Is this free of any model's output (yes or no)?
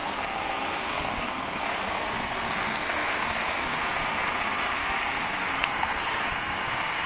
no